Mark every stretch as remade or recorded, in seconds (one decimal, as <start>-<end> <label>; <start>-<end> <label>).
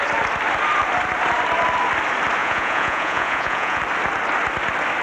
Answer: 0.0-2.4 recorded; 2.4-3.8 remade; 3.8-5.0 recorded